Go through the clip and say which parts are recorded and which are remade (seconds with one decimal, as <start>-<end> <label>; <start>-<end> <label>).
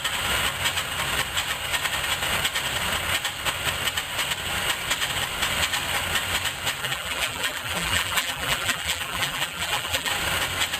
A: 0.0-6.8 recorded; 6.8-10.1 remade; 10.1-10.8 recorded